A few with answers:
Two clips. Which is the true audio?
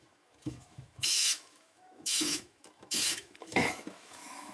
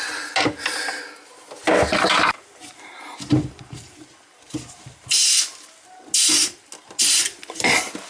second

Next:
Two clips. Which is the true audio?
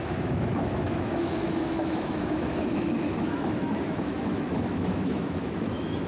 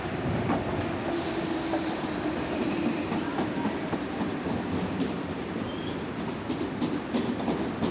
second